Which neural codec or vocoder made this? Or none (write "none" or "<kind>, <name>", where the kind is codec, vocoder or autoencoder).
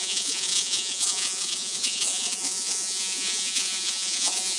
vocoder, Vocos